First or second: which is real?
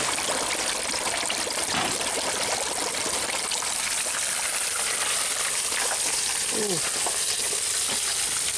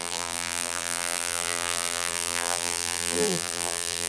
first